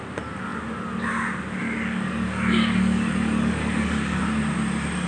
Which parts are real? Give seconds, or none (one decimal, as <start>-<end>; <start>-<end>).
0.0-1.6; 4.2-5.1